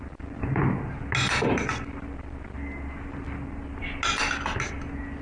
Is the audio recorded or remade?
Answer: recorded